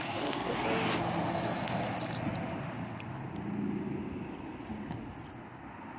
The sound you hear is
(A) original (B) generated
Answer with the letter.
A